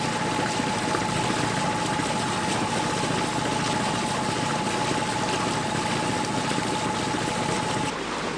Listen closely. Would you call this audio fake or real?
real